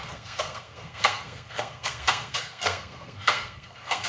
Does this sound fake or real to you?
fake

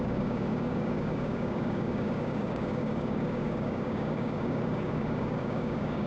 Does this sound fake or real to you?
fake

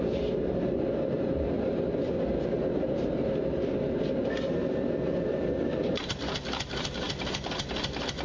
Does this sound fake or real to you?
real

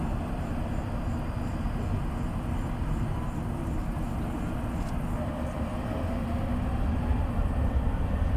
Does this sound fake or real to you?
real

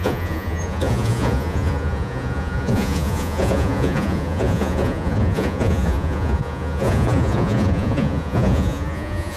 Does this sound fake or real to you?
fake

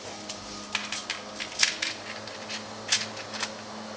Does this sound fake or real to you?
real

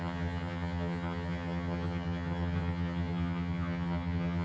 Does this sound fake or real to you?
fake